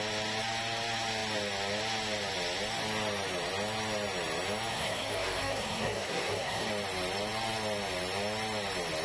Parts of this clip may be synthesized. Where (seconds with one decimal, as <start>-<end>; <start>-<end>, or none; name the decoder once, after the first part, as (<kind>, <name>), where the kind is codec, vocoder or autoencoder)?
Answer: 4.7-6.7 (codec, SNAC)